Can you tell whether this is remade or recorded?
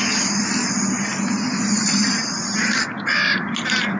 recorded